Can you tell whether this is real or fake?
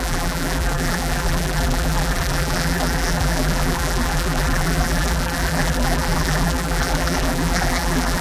fake